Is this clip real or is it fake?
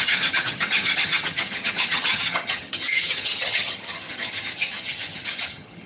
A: fake